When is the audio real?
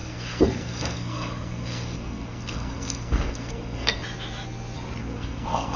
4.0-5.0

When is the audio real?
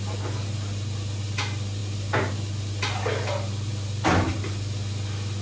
0.0-5.4